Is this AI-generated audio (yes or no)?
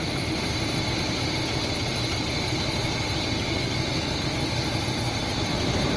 no